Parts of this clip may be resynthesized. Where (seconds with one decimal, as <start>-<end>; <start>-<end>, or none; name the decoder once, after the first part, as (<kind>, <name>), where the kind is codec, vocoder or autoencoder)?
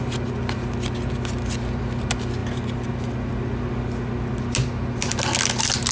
none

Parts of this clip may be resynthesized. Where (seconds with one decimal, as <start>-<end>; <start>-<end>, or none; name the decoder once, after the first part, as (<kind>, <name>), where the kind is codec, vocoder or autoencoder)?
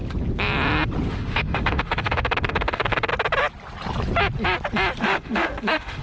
1.1-3.1 (autoencoder, DAC-VAE); 5.0-6.0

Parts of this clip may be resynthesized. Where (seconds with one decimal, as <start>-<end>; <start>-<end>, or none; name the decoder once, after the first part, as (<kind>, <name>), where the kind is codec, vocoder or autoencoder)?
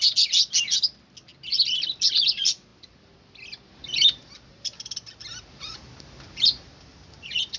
none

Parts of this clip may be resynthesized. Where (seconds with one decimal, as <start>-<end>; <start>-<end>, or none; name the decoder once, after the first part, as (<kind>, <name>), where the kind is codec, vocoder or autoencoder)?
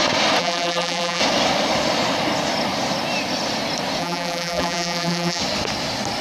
0.4-1.2 (vocoder, BigVGAN v2); 4.0-5.4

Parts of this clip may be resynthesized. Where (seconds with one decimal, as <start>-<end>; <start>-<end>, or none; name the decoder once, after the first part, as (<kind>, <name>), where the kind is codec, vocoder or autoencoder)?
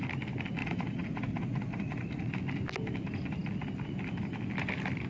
0.6-2.3 (vocoder, Vocos)